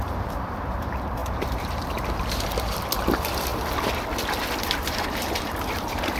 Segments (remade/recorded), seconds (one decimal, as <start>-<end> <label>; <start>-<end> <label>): 0.0-3.5 remade; 3.5-4.7 recorded; 4.7-6.2 remade